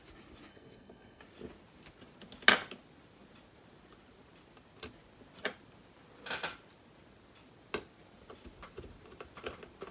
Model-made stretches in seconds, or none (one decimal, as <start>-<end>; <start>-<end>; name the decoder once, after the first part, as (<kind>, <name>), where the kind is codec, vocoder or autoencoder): 0.5-1.2 (codec, SNAC)